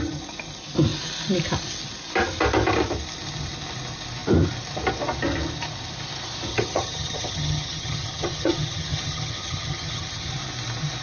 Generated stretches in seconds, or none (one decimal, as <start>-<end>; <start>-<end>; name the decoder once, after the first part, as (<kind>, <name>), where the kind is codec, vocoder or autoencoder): 6.5-10.3 (vocoder, HiFi-GAN)